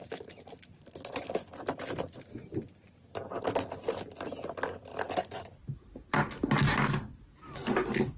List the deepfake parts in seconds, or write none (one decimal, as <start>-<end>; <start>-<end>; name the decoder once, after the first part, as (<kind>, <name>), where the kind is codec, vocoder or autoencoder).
0.0-1.2 (vocoder, BigVGAN v2)